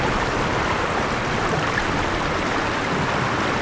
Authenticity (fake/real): real